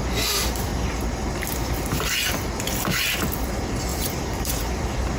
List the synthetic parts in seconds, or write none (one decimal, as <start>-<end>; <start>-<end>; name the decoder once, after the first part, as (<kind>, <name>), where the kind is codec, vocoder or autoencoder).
3.9-4.6 (vocoder, BigVGAN v2)